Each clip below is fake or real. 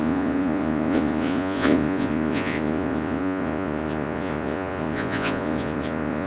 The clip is fake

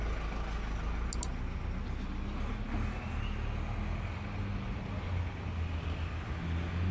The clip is real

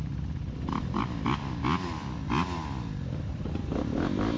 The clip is real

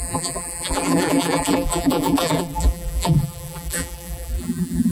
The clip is fake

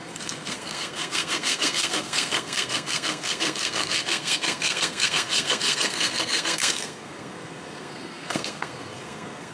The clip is fake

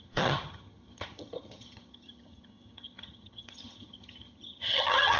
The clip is fake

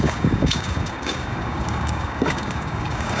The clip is fake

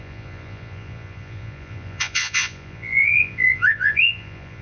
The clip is fake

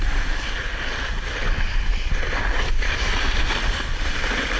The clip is real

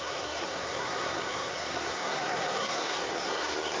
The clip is fake